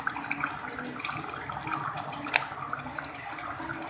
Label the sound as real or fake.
real